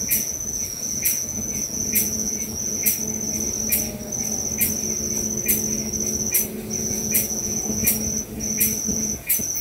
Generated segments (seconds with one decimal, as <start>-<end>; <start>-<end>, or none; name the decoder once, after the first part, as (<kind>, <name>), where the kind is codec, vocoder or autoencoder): 0.0-2.8 (vocoder, Vocos); 6.8-7.8; 8.9-9.6